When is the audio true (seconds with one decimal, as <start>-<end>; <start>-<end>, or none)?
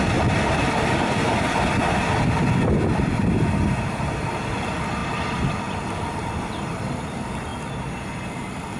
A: 1.8-4.4; 7.5-8.8